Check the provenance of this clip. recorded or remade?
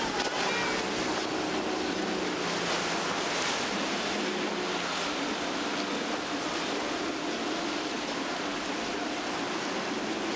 recorded